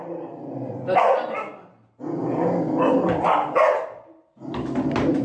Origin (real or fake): real